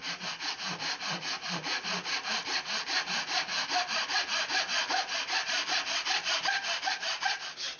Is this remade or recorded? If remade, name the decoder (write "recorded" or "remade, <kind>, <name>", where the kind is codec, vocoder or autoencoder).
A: remade, vocoder, BigVGAN v2